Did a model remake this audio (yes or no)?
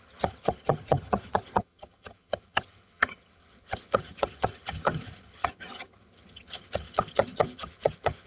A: yes